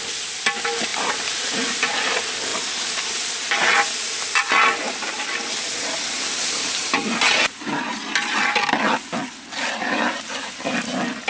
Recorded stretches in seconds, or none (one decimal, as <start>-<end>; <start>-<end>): 0.0-0.9; 1.5-11.3

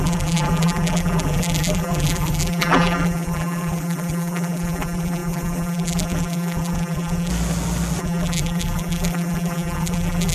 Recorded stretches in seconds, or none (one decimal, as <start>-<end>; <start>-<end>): 7.3-8.0

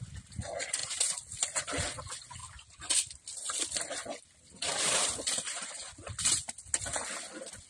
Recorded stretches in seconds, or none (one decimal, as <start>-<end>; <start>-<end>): 0.0-2.4; 5.7-7.7

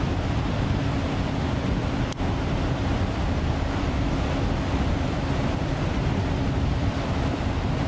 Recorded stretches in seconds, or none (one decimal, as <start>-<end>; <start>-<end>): 0.0-2.9; 4.0-7.9